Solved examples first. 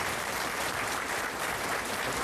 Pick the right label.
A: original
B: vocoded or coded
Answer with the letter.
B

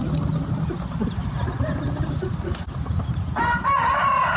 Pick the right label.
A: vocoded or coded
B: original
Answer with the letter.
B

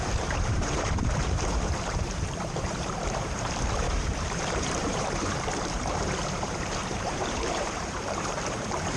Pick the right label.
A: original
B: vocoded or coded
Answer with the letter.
B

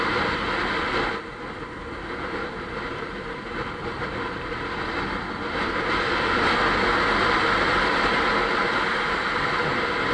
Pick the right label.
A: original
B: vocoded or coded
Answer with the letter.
A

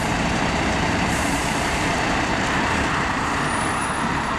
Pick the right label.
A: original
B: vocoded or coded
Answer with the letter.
B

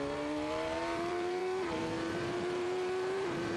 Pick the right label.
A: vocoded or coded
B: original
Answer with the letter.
A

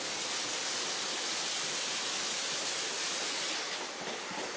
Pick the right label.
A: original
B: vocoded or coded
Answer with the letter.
A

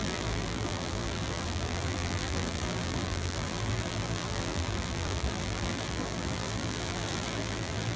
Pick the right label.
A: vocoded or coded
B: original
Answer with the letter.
A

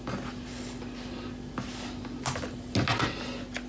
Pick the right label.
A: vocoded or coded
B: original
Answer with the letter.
B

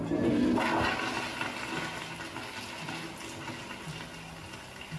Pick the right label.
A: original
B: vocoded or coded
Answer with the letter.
A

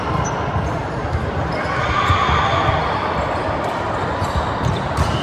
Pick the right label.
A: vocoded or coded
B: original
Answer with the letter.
A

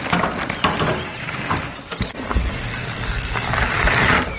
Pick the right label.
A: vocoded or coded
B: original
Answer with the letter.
B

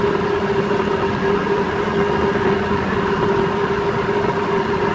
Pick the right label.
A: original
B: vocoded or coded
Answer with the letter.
A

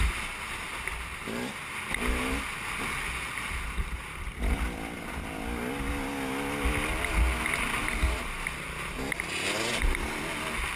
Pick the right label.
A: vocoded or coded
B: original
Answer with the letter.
B